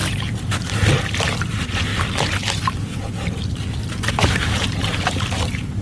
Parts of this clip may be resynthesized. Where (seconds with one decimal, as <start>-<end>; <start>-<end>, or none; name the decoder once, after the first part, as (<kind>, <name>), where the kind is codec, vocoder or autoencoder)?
0.0-1.9 (vocoder, BigVGAN v2); 4.1-5.8